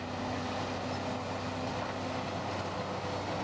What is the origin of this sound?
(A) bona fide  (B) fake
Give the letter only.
A